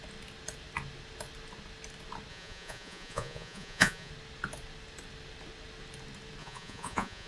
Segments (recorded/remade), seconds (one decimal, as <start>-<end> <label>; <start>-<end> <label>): 0.0-2.3 recorded; 2.3-4.1 remade; 4.1-6.4 recorded; 6.4-7.3 remade

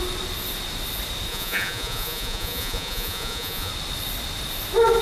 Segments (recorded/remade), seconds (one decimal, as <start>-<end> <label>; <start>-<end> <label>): 0.0-1.3 recorded; 1.3-3.7 remade; 3.7-5.0 recorded

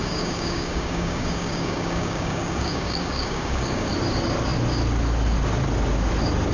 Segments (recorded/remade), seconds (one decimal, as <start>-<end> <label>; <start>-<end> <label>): 0.0-3.9 remade; 3.9-6.5 recorded